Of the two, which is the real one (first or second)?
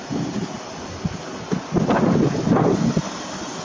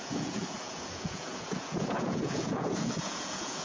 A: first